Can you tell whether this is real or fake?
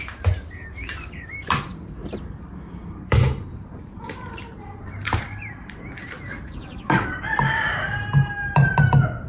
fake